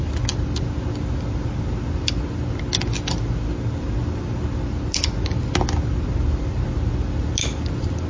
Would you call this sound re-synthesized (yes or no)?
no